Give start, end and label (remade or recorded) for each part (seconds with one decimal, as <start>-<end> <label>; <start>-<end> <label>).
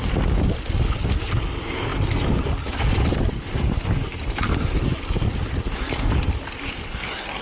0.0-7.4 recorded